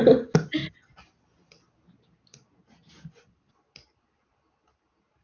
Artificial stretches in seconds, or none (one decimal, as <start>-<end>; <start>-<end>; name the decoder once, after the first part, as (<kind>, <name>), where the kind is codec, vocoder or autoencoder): none